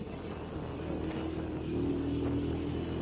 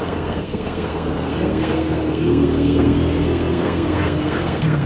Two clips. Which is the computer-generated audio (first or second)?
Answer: second